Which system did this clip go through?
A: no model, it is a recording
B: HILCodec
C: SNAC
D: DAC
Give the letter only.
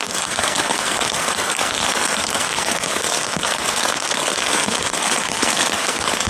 C